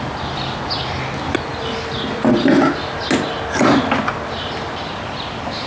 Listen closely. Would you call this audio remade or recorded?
recorded